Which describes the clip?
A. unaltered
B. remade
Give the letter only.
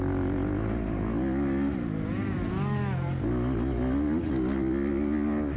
A